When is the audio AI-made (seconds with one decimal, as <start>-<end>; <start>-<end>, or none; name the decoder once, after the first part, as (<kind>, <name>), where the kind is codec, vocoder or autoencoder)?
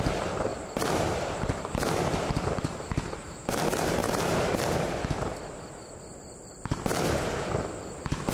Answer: 0.5-4.6 (vocoder, BigVGAN v2)